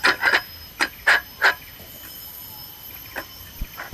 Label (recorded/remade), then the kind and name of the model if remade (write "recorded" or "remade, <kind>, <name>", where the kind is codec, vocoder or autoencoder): recorded